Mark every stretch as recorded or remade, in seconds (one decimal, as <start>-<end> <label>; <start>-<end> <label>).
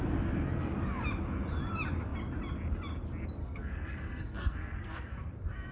0.0-3.4 recorded; 3.4-5.3 remade; 5.3-5.7 recorded